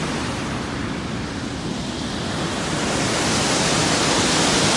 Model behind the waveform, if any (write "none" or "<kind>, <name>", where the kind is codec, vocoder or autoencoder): none